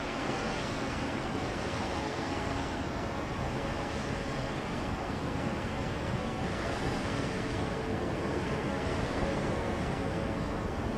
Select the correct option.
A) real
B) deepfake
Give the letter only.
B